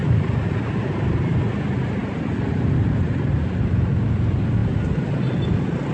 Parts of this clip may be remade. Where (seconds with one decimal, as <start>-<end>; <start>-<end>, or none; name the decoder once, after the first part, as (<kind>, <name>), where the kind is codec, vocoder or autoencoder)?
0.0-0.7 (vocoder, BigVGAN v2)